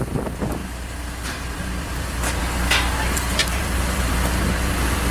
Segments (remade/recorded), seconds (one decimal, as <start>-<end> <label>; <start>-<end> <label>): 0.0-0.6 recorded; 0.6-2.4 remade; 2.4-3.4 recorded; 3.4-4.1 remade; 4.1-5.1 recorded